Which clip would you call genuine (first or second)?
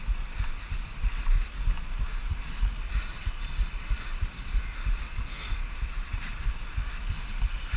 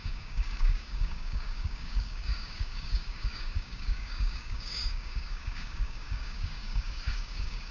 first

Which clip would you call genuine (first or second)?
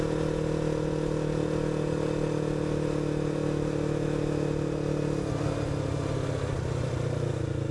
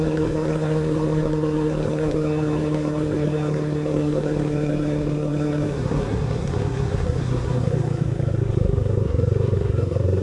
first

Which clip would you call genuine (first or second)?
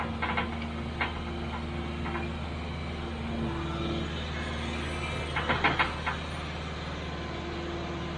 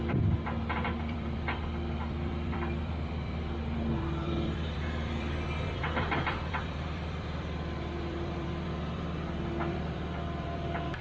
first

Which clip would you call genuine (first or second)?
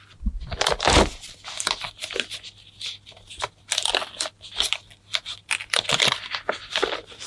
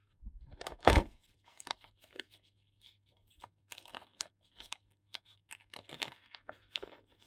first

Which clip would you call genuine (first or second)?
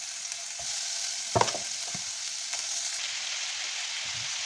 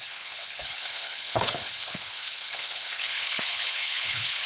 first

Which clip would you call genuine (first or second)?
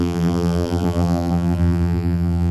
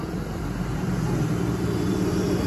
second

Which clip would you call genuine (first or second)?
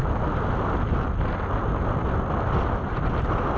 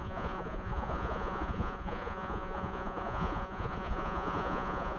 first